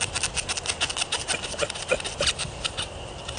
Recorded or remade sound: recorded